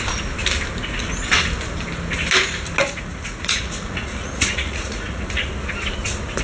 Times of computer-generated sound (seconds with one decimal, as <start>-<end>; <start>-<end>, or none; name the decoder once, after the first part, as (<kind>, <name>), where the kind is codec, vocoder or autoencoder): 2.8-5.5 (vocoder, Vocos)